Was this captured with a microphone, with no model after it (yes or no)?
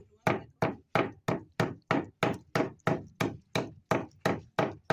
yes